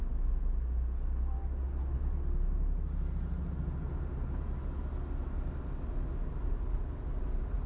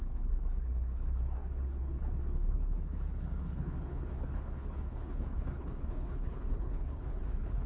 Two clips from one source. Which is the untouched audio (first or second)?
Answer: first